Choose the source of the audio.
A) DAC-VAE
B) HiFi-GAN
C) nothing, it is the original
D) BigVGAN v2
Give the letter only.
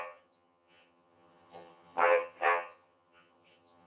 B